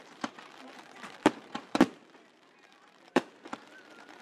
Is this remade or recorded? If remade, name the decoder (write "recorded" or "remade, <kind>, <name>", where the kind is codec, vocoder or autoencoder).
remade, vocoder, BigVGAN v2